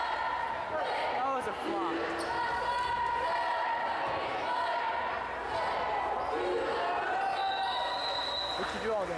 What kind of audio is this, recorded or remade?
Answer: recorded